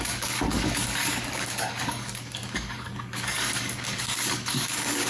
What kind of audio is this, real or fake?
fake